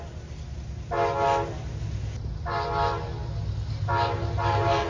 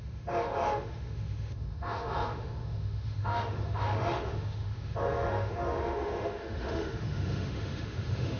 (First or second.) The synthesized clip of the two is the second